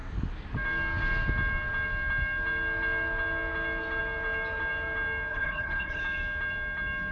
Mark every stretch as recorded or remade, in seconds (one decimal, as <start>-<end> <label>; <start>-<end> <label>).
0.0-5.3 recorded; 5.3-6.0 remade; 6.0-7.1 recorded